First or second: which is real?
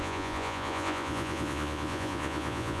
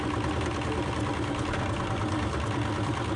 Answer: second